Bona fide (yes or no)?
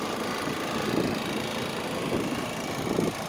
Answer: yes